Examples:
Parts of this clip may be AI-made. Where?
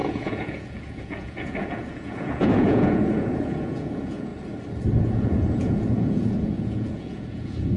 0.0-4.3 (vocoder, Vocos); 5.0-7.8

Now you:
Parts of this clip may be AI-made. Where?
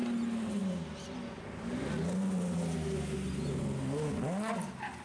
none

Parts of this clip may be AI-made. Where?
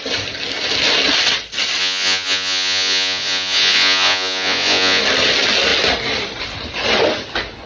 1.8-5.0 (vocoder, Vocos)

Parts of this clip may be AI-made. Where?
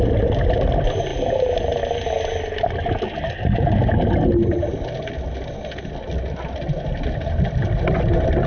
none